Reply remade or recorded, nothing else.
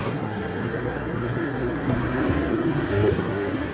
remade